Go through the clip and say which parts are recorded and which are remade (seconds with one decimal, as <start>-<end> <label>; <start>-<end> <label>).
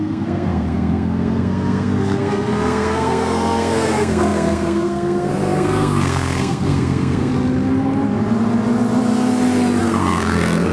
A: 0.0-7.3 remade; 7.3-9.8 recorded; 9.8-10.7 remade